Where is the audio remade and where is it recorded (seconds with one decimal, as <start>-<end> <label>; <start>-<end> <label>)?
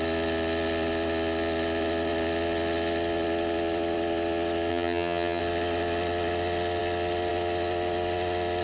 0.0-4.7 recorded; 4.7-5.4 remade; 5.4-8.6 recorded